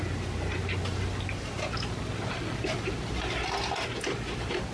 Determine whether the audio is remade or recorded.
recorded